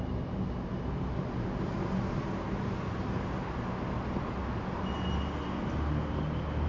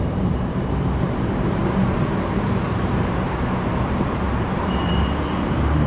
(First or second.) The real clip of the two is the first